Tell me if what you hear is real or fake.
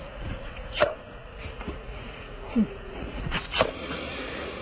fake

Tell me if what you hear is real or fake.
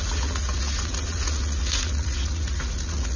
fake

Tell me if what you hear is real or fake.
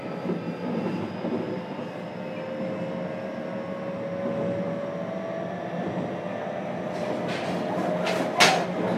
real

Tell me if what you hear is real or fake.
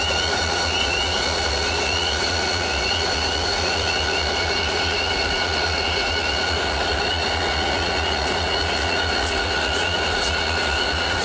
fake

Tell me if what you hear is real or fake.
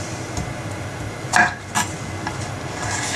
real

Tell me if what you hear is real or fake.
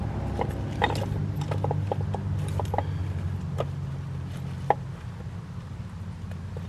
real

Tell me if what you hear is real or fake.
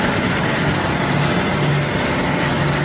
real